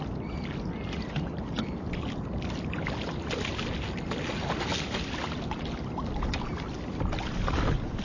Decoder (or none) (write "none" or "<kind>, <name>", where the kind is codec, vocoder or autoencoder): none